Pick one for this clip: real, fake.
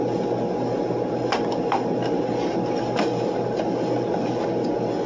real